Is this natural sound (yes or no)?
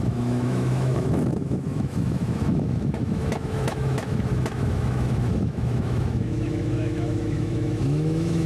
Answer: no